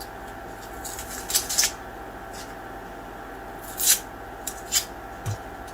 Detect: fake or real real